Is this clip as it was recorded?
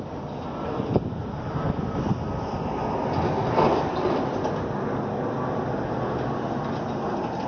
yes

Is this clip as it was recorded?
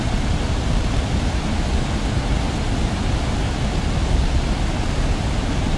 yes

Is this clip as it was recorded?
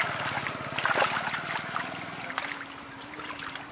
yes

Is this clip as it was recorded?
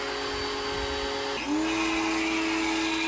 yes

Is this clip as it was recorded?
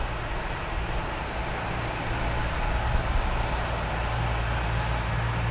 yes